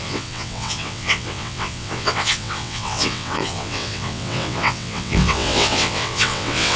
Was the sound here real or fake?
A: fake